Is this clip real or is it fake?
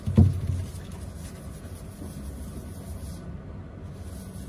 real